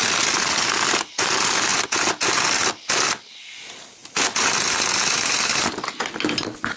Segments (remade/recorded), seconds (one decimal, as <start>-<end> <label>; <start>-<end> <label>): 0.0-6.8 recorded